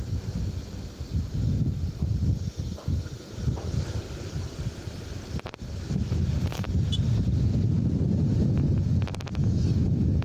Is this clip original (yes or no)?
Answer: yes